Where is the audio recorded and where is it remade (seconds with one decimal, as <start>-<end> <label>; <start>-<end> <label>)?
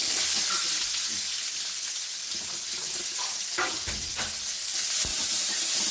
0.0-5.9 recorded